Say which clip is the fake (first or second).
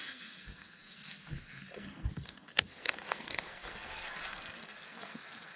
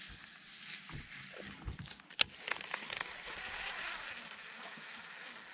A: first